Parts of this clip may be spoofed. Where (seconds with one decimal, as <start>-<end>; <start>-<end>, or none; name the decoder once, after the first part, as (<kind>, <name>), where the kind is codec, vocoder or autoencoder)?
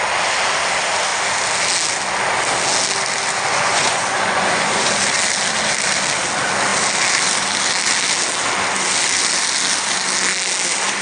3.5-4.9 (vocoder, Vocos)